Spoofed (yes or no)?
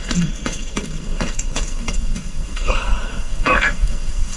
yes